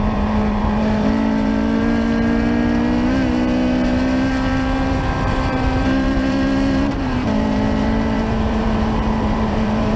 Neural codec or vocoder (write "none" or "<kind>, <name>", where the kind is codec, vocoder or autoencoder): vocoder, BigVGAN v2